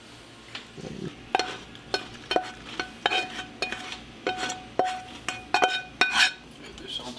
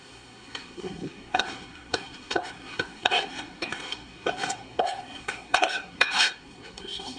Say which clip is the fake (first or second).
second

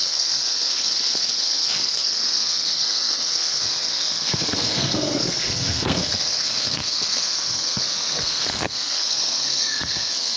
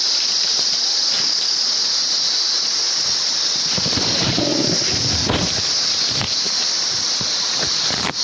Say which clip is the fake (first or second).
first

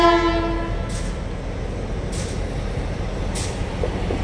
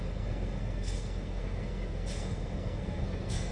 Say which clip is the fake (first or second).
second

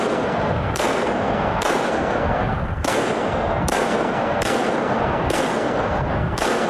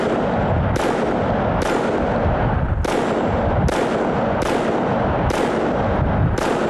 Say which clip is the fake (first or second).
first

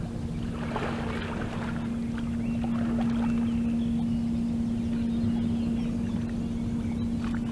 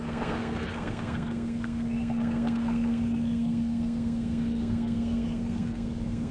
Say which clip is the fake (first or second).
second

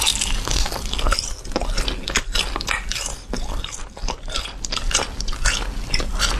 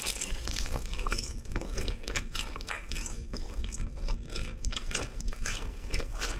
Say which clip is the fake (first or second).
second